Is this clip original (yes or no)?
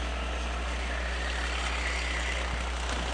yes